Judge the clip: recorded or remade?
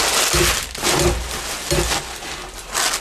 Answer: recorded